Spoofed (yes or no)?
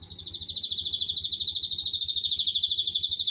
no